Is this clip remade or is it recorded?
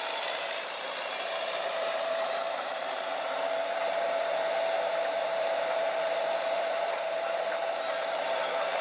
remade